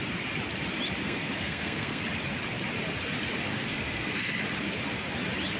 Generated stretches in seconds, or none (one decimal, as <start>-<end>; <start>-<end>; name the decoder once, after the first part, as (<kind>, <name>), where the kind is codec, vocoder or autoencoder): 1.0-2.0 (codec, SNAC); 3.5-4.3

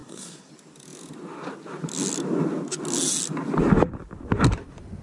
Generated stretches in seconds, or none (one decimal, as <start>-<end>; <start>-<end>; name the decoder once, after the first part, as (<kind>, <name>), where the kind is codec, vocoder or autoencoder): 0.0-0.5 (codec, SNAC)

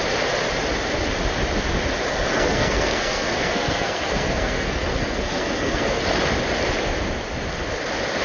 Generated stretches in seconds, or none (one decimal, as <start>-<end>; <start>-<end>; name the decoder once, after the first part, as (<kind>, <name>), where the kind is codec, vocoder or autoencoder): 2.1-6.0 (codec, SNAC)

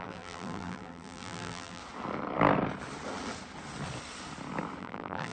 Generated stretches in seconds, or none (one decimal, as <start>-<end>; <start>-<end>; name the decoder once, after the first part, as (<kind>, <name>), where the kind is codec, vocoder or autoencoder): 0.0-1.8 (vocoder, BigVGAN v2); 4.8-5.3